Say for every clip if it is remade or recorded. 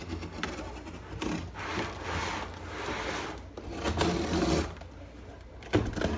recorded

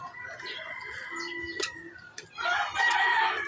recorded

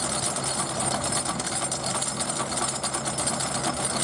recorded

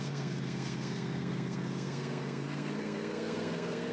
remade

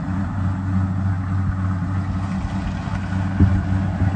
recorded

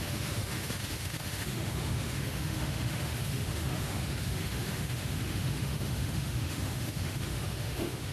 remade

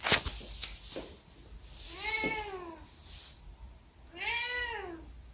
recorded